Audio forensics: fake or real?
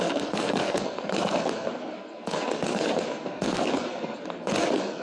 fake